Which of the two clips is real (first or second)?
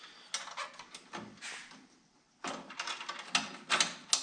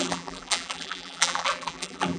first